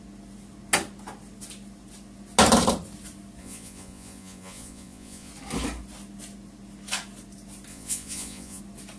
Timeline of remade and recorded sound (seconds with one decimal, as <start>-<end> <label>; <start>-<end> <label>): 0.0-3.4 recorded; 3.4-5.3 remade; 5.3-7.7 recorded; 7.7-8.6 remade; 8.6-9.0 recorded